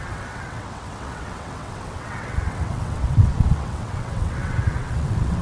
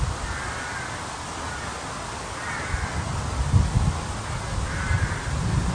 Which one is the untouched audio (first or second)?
second